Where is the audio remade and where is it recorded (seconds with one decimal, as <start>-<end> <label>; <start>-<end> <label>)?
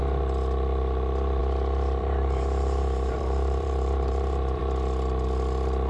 0.0-1.4 recorded; 1.4-4.6 remade; 4.6-5.9 recorded